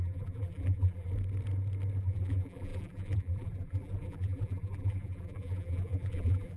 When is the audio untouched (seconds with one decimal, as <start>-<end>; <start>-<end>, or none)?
1.1-2.0